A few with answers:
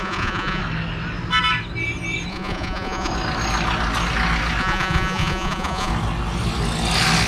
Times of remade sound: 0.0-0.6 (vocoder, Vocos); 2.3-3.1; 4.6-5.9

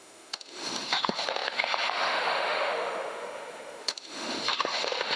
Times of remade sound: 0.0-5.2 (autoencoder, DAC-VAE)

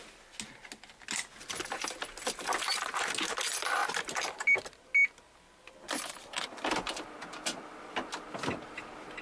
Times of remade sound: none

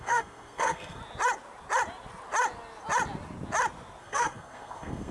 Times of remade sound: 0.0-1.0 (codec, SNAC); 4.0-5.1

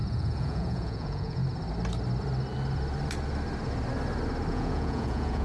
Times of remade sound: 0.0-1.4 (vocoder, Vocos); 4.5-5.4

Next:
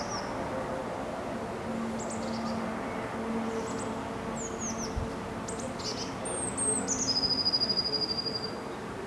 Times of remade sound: none